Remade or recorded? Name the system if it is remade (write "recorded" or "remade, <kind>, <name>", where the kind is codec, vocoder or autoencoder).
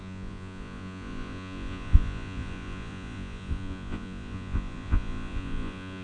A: remade, vocoder, Vocos